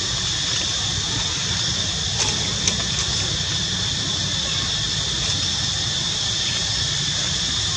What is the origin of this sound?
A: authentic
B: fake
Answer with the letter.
A